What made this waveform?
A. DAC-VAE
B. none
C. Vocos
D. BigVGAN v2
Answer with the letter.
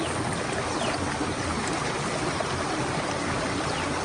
B